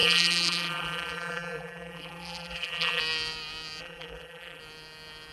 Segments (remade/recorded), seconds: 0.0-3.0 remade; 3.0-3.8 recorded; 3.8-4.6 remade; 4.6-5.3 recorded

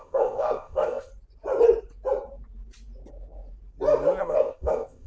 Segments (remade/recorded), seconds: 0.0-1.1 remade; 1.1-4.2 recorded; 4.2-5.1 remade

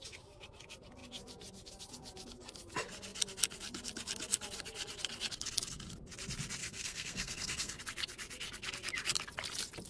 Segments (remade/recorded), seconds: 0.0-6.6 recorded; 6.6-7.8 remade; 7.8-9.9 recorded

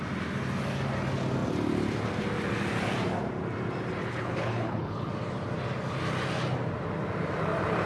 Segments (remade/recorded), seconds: 0.0-4.0 recorded; 4.0-5.1 remade; 5.1-7.9 recorded